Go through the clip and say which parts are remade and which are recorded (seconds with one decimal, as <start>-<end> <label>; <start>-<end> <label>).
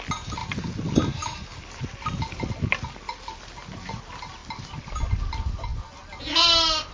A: 0.0-6.9 recorded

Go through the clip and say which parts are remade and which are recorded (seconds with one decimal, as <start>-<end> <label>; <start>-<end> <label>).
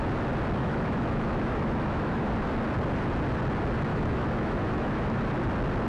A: 0.0-0.6 recorded; 0.6-2.3 remade; 2.3-3.9 recorded; 3.9-5.2 remade; 5.2-5.9 recorded